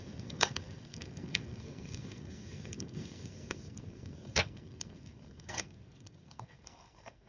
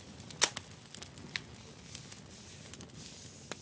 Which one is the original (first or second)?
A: second